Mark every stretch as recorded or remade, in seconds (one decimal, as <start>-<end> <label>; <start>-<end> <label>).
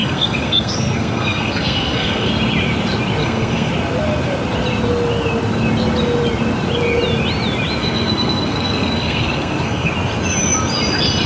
0.0-2.3 remade; 2.3-3.2 recorded; 3.2-3.7 remade; 3.7-7.8 recorded; 7.8-9.9 remade; 9.9-11.3 recorded